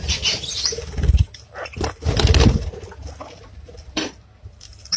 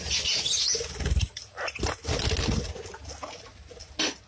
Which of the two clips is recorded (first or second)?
second